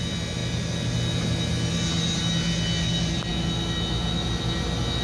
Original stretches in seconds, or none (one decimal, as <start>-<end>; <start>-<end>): 0.0-5.0